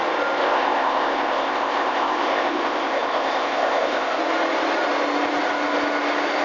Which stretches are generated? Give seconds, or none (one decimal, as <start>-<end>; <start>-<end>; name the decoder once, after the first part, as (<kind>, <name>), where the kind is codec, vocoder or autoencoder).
0.4-4.2 (codec, ZipCodec)